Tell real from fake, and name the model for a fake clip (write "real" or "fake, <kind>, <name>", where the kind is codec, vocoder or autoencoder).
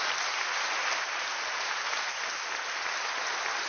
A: real